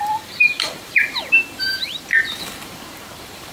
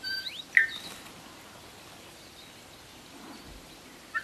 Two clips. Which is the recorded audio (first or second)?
second